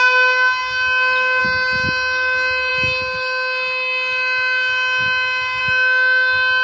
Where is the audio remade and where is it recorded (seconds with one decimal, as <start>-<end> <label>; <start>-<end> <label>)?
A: 0.0-6.6 recorded